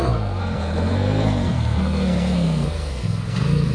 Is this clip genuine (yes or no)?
no